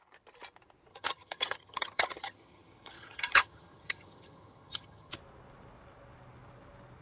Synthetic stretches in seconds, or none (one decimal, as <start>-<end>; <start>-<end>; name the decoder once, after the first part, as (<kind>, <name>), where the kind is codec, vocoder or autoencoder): 0.9-5.1 (vocoder, HiFi-GAN)

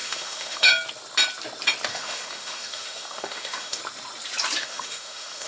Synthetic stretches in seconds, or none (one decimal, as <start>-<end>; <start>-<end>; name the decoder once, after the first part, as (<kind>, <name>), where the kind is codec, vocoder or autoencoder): 0.0-0.7 (autoencoder, DAC-VAE); 1.9-3.8; 4.6-5.5

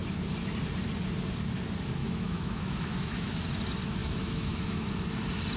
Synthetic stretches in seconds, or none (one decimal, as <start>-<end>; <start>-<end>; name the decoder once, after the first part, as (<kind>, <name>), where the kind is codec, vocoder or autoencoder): 2.0-3.3 (autoencoder, DAC-VAE); 4.0-4.9

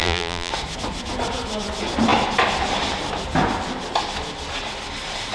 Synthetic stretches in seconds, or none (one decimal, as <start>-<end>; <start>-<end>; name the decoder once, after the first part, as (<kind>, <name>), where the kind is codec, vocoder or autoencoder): 0.0-0.5 (vocoder, BigVGAN v2)